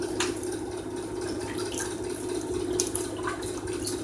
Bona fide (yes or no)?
yes